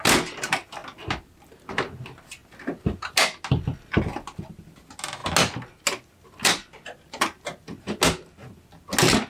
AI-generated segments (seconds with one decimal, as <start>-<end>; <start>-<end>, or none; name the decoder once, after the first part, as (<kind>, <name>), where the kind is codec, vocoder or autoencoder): none